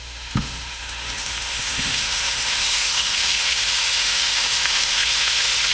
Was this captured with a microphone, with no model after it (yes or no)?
no